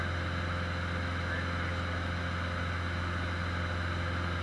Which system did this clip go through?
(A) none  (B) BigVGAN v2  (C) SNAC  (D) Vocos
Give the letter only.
A